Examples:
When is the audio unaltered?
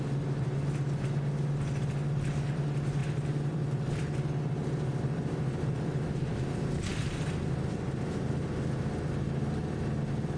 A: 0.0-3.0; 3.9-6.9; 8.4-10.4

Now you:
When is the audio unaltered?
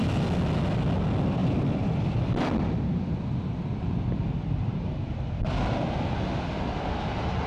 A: 0.0-1.4; 4.9-7.5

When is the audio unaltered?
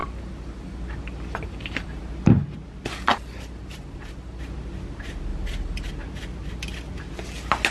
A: 2.0-3.1; 4.4-5.3; 5.9-7.7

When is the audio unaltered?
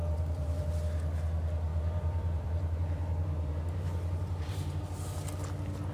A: 0.7-1.7; 4.8-5.9